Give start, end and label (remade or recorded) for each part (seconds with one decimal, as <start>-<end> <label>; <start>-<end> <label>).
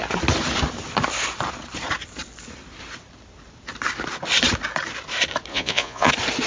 0.0-5.5 recorded; 5.5-6.1 remade; 6.1-6.5 recorded